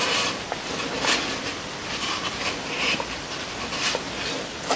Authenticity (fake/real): real